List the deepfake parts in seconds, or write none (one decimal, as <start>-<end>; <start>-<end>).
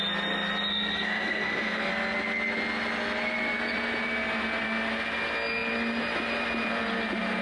0.7-1.9